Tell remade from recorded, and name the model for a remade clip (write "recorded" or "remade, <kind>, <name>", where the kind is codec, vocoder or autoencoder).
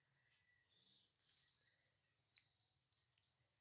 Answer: recorded